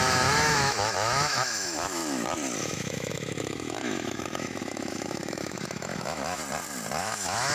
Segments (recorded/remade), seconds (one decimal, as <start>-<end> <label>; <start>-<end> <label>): 0.0-2.0 remade; 2.0-2.6 recorded; 2.6-6.4 remade; 6.4-7.0 recorded; 7.0-7.5 remade

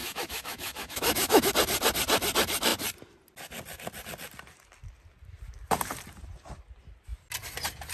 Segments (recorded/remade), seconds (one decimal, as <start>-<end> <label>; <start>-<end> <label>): 0.0-1.5 remade; 1.5-7.9 recorded

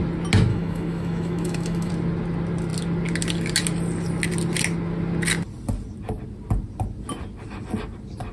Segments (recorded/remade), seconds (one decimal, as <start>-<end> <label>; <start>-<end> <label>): 0.0-0.5 recorded; 0.5-1.9 remade; 1.9-8.3 recorded